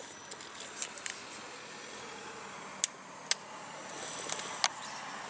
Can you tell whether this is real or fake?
real